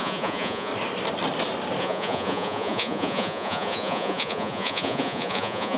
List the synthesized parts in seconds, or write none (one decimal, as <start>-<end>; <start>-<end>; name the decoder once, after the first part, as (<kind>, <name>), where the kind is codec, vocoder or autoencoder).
0.0-0.7 (vocoder, Vocos); 1.8-5.8